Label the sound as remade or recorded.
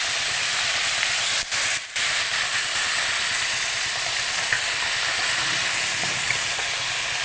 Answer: recorded